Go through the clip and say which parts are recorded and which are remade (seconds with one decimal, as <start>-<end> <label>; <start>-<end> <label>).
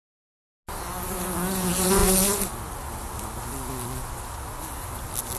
0.0-5.4 recorded